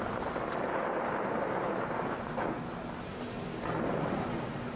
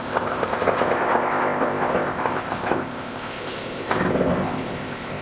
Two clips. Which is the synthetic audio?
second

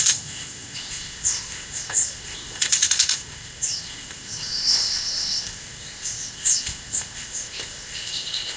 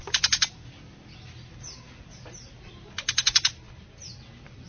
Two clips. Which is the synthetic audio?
first